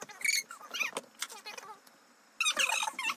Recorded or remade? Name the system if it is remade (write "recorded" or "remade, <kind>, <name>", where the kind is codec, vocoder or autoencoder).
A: recorded